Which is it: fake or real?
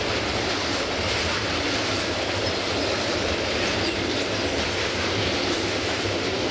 real